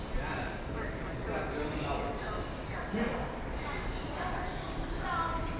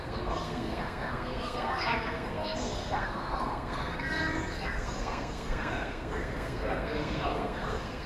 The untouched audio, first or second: first